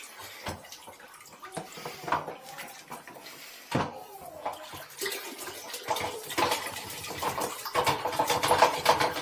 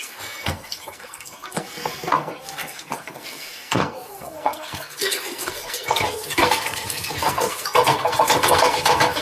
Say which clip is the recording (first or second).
first